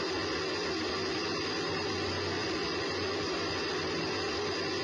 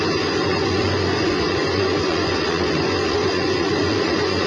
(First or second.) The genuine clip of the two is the first